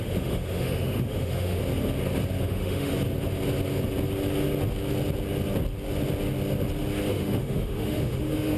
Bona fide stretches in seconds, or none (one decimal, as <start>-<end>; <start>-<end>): 1.6-2.4; 2.9-7.1